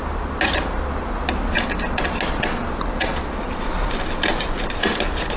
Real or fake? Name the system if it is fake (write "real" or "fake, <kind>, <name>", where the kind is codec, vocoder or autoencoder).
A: real